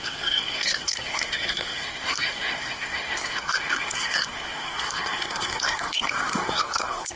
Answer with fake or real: fake